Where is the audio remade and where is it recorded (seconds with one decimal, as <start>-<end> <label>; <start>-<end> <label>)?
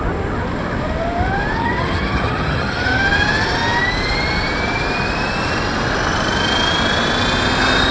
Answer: 0.0-1.6 recorded; 1.6-3.0 remade; 3.0-7.9 recorded